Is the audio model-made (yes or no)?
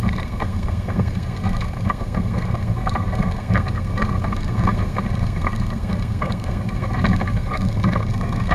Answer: yes